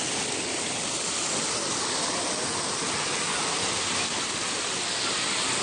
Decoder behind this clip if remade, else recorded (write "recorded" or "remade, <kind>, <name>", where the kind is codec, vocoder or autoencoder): recorded